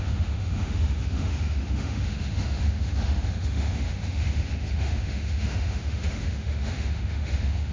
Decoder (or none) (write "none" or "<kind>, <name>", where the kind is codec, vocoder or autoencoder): autoencoder, DAC-VAE